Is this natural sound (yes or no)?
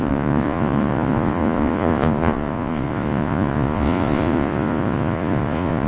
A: no